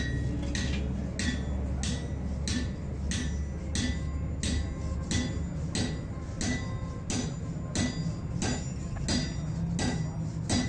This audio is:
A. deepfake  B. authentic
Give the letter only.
B